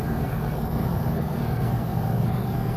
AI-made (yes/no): yes